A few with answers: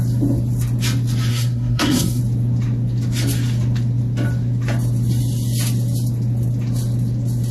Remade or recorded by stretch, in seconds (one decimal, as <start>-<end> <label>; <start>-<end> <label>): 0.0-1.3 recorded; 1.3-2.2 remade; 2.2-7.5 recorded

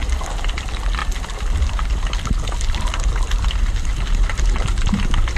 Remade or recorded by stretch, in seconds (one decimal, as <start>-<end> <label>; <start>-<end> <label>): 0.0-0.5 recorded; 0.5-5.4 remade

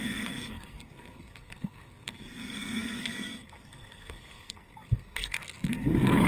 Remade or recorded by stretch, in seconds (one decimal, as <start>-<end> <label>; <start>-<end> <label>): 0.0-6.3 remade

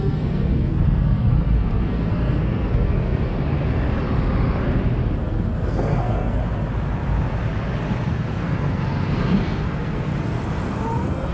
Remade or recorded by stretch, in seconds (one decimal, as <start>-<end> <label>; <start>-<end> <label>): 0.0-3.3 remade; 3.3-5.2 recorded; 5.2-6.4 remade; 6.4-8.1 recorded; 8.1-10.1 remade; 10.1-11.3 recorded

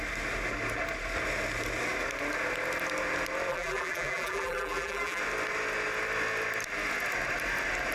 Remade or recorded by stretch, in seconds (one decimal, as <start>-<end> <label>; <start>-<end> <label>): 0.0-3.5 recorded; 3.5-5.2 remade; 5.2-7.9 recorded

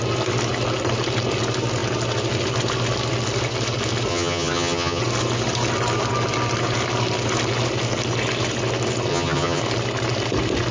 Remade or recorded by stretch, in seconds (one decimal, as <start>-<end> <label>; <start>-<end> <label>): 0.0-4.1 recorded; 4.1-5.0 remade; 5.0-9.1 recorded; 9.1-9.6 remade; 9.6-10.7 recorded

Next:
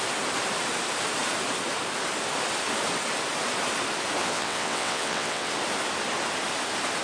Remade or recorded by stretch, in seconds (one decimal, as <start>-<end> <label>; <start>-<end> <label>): 0.0-4.2 recorded; 4.2-5.5 remade; 5.5-7.0 recorded

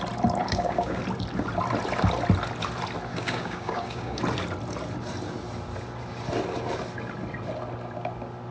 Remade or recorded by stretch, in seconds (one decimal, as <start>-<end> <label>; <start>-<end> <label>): 0.0-0.4 recorded; 0.4-1.0 remade; 1.0-3.1 recorded; 3.1-4.2 remade; 4.2-8.5 recorded